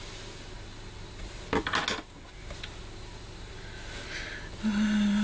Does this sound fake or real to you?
real